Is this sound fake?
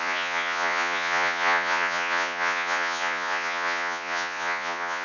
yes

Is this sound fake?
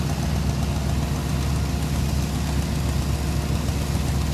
no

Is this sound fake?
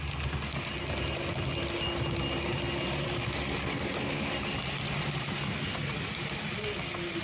no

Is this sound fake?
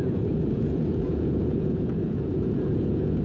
yes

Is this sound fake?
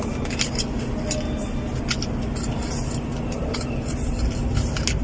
no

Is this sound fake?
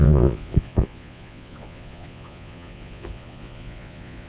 yes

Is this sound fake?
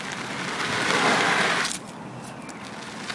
no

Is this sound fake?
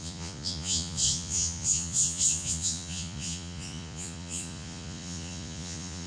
yes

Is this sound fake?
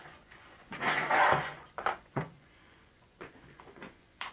yes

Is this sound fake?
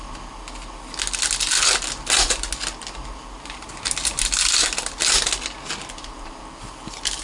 no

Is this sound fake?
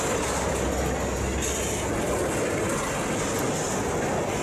no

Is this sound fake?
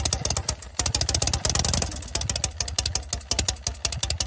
no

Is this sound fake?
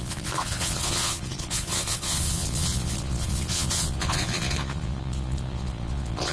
yes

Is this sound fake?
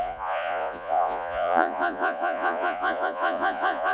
yes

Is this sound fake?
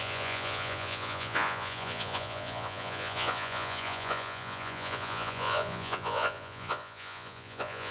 yes